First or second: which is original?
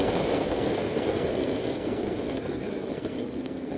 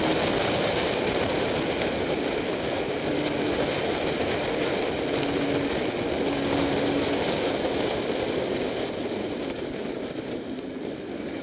second